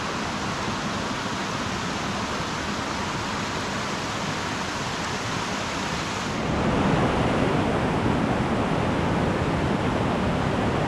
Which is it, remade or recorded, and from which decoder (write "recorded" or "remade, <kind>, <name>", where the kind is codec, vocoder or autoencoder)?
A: recorded